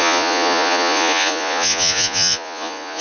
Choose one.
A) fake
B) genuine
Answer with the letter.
A